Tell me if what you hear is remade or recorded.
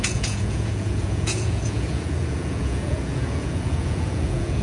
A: remade